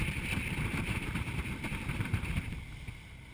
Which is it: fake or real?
fake